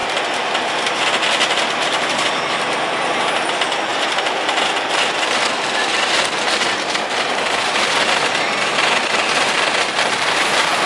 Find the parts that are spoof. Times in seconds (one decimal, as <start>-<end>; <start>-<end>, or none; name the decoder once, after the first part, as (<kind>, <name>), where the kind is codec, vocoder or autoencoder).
3.9-4.5 (vocoder, BigVGAN v2); 9.4-10.9